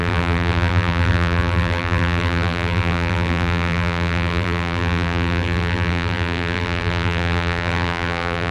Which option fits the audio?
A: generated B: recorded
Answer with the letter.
A